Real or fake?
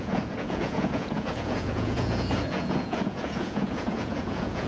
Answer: fake